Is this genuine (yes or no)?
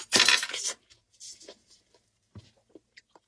no